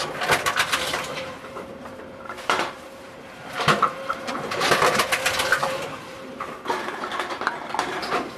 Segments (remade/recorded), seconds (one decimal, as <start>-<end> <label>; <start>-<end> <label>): 0.0-1.1 recorded; 1.1-4.7 remade; 4.7-5.5 recorded; 5.5-7.5 remade; 7.5-8.4 recorded